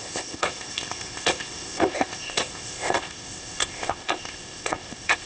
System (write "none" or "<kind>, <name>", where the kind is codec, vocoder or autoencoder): codec, ZipCodec